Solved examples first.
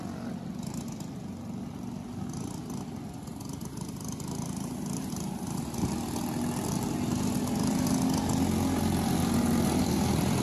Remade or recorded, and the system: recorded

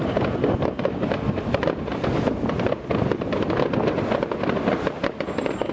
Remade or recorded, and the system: recorded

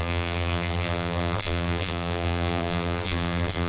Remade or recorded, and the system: remade, vocoder, BigVGAN v2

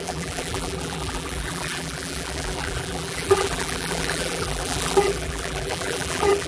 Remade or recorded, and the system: remade, vocoder, BigVGAN v2